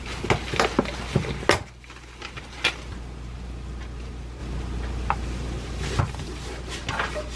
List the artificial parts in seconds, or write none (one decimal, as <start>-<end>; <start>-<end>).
none